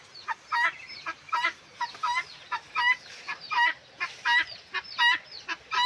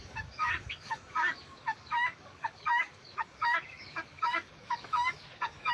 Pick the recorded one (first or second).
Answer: first